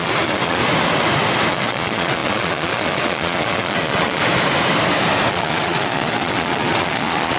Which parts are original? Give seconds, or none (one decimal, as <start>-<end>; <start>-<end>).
0.6-1.5; 4.2-5.3